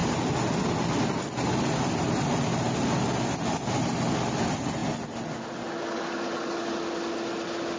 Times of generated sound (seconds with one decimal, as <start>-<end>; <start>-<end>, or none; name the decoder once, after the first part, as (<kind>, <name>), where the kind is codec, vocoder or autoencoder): none